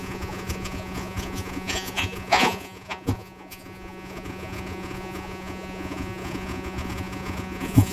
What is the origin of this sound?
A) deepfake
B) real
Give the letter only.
A